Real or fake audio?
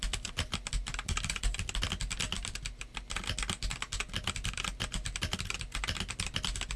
real